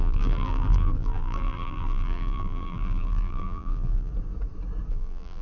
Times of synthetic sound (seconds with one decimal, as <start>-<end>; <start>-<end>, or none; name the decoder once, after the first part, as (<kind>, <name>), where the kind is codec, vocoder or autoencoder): 0.0-4.1 (vocoder, BigVGAN v2); 4.9-5.4